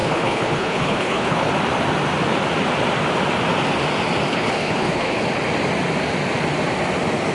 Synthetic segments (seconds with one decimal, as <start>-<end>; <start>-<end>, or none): 0.0-1.5; 4.3-5.2